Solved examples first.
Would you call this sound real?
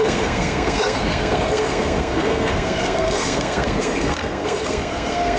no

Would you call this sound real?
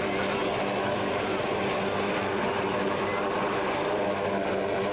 yes